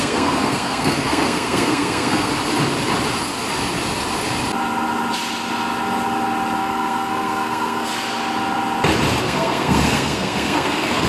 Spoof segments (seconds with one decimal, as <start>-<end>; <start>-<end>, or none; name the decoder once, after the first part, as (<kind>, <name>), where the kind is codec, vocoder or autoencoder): 0.0-2.3 (codec, SNAC); 6.6-7.9; 9.2-11.1